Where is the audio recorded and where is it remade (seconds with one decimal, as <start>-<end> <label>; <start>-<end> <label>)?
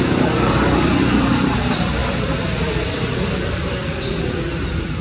0.0-5.0 remade